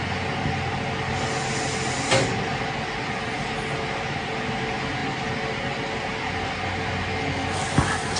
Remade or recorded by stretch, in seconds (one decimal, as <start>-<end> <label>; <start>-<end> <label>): 0.0-8.2 recorded